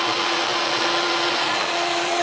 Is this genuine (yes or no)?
no